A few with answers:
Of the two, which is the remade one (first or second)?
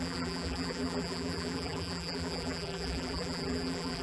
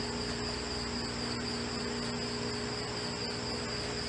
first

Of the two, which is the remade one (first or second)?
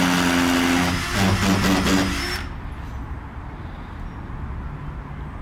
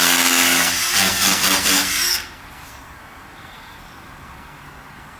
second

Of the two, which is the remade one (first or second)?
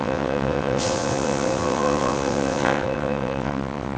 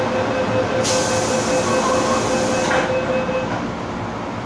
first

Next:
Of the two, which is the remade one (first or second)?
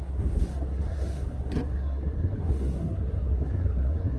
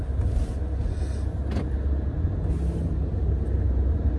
first